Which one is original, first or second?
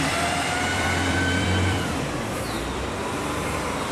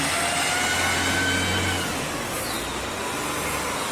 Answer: second